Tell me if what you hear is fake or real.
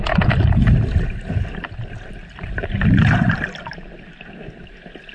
real